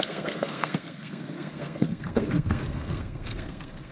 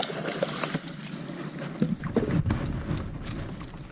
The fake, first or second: first